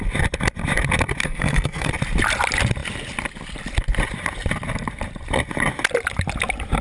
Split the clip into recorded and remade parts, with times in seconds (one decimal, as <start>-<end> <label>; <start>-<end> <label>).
0.0-1.2 recorded; 1.2-1.9 remade; 1.9-6.8 recorded